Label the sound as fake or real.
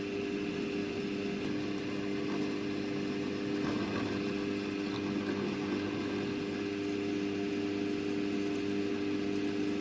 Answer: real